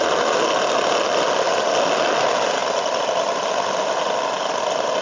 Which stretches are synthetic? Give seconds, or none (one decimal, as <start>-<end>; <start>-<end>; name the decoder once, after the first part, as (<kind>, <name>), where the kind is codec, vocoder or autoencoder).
none